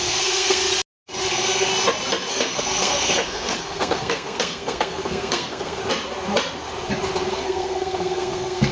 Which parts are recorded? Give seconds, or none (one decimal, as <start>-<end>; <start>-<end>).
0.6-1.2; 1.7-2.3; 5.8-7.3